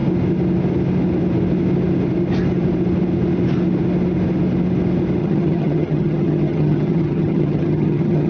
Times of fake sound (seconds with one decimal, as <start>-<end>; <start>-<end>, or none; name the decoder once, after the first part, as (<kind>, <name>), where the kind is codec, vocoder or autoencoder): 5.2-8.3 (vocoder, HiFi-GAN)